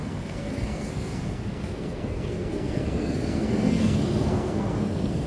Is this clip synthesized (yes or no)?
yes